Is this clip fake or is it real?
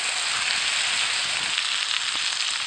real